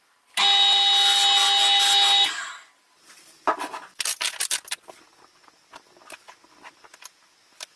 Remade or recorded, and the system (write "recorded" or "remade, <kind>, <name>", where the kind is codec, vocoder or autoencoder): recorded